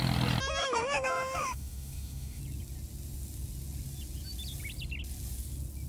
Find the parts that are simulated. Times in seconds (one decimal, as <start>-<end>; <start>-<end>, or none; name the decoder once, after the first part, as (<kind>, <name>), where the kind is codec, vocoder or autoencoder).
0.6-2.4 (autoencoder, DAC-VAE)